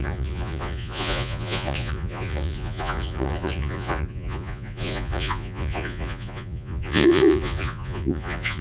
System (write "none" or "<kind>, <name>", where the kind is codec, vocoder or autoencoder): vocoder, Vocos